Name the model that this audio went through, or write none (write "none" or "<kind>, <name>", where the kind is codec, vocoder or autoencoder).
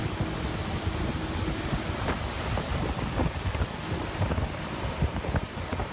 none